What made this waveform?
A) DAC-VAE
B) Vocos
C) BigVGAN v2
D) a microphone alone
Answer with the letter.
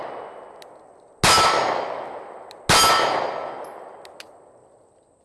D